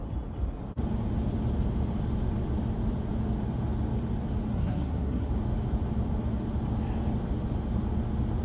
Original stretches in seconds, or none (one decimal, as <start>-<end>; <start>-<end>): 0.0-4.5; 5.3-8.4